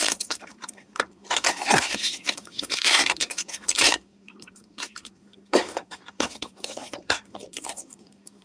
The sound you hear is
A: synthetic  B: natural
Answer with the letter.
A